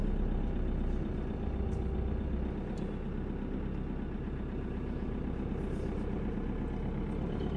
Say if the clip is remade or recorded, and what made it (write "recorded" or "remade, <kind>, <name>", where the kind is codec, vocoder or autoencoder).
recorded